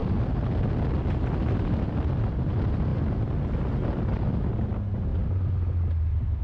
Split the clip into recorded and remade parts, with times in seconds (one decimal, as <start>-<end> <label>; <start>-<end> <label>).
0.0-0.8 remade; 0.8-6.4 recorded